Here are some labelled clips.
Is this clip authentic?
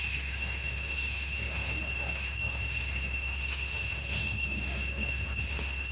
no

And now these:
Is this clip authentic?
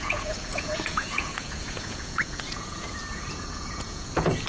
no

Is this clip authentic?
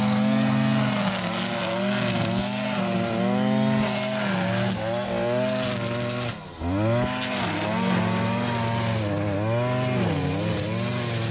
yes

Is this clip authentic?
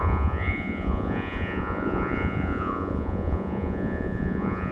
no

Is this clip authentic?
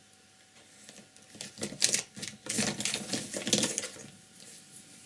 yes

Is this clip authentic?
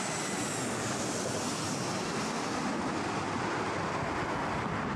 yes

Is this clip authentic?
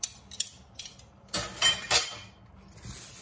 yes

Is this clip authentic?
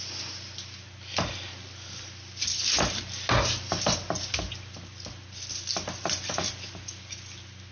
yes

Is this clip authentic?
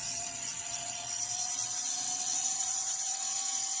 no